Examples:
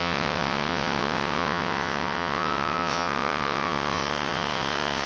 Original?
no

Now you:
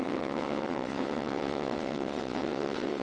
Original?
no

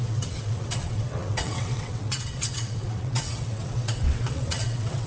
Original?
no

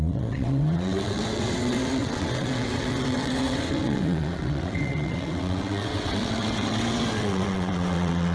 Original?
no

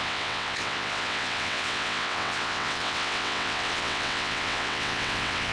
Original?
no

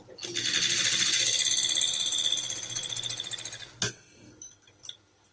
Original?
yes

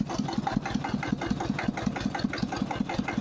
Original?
yes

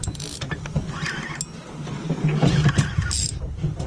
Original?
yes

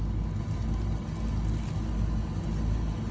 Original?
yes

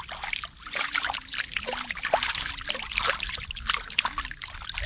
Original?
yes